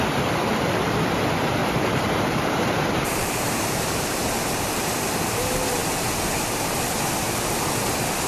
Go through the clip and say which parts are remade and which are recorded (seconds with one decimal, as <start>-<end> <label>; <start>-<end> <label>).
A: 0.0-1.6 recorded; 1.6-4.9 remade; 4.9-8.3 recorded

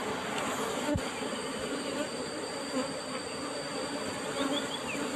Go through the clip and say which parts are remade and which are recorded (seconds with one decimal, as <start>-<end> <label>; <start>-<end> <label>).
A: 0.0-1.3 recorded; 1.3-2.6 remade; 2.6-3.7 recorded; 3.7-5.2 remade

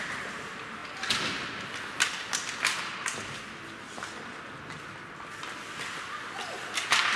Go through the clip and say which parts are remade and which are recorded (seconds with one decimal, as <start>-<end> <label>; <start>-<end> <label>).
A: 0.0-7.2 recorded

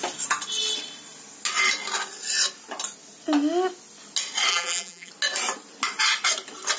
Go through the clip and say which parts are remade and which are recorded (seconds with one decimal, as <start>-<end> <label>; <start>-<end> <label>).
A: 0.0-4.5 recorded; 4.5-5.1 remade; 5.1-6.8 recorded